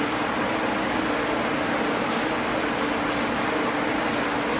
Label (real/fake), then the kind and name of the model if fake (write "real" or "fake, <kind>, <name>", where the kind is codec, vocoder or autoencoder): real